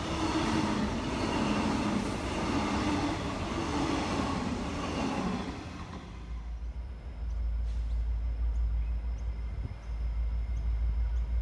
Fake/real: real